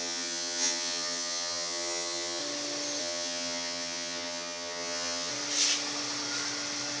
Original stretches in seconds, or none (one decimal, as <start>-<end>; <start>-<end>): 2.4-3.0; 5.3-7.0